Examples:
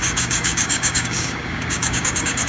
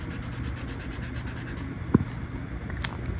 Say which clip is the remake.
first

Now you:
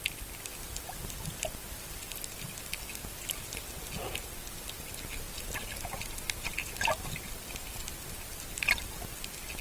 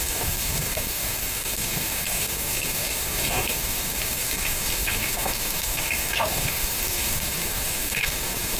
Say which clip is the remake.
second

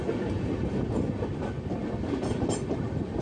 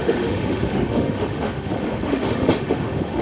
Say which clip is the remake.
second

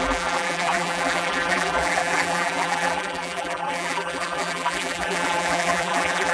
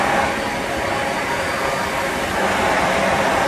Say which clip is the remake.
first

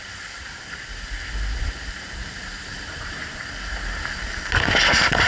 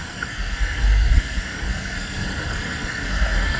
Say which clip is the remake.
second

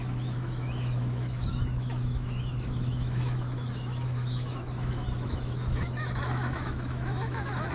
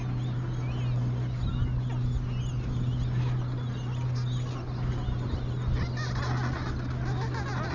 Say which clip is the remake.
first